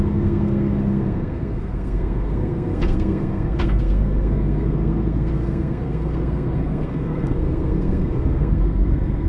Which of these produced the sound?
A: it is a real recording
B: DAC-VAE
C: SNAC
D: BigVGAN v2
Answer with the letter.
C